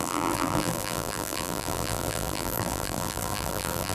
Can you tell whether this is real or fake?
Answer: fake